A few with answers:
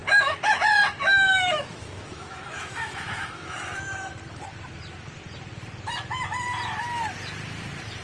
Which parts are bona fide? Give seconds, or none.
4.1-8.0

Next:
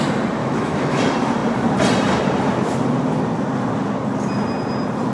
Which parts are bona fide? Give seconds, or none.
0.0-0.4; 1.0-5.1

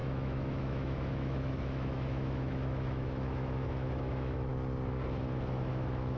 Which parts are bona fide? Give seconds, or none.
4.5-5.7

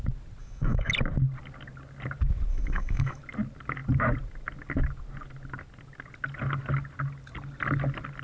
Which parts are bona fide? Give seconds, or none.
0.0-0.4; 0.9-2.5; 3.2-8.2

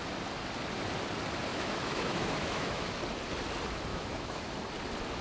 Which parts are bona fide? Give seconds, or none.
0.0-1.5; 3.0-3.9; 4.5-5.2